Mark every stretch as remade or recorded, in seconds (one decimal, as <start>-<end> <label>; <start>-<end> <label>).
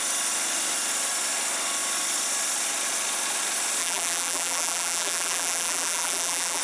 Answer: 0.0-3.8 recorded; 3.8-6.6 remade